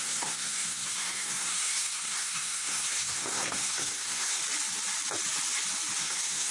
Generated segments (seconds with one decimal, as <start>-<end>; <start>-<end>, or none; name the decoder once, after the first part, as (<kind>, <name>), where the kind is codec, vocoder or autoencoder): 0.0-4.4 (codec, SNAC); 6.0-6.5